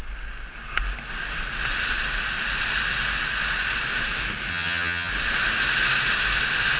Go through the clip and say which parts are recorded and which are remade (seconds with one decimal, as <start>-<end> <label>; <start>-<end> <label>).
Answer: 0.0-4.5 recorded; 4.5-5.1 remade; 5.1-6.8 recorded